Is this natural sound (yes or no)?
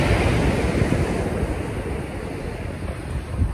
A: yes